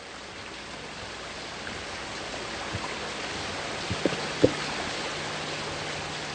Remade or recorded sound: recorded